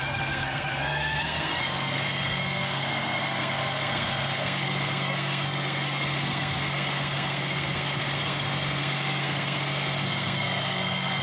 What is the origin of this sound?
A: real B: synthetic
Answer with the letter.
B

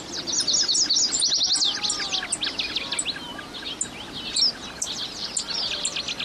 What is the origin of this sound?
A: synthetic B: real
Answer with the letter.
B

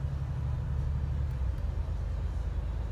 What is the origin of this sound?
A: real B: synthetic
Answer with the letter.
A